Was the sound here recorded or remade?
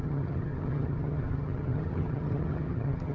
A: remade